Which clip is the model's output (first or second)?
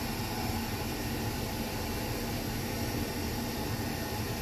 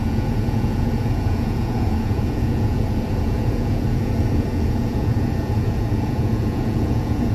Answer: second